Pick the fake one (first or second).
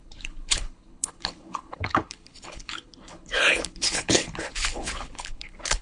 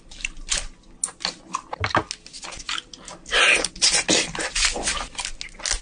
first